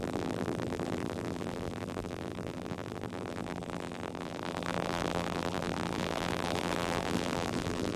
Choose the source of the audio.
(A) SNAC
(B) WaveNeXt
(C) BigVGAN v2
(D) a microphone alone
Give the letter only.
C